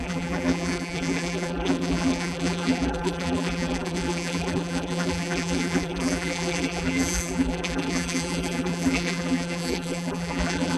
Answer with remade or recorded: remade